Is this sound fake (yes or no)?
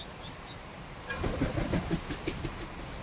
no